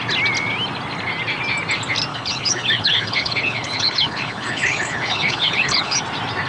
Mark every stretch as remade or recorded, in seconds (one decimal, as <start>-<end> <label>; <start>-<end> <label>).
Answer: 0.0-2.1 recorded; 2.1-6.0 remade; 6.0-6.5 recorded

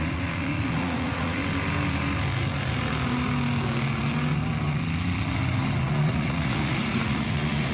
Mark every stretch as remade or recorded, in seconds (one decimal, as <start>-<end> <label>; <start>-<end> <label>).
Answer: 0.0-1.4 remade; 1.4-5.8 recorded; 5.8-7.7 remade